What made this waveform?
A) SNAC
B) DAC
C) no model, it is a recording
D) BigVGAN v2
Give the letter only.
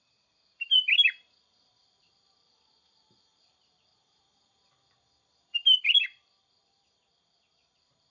D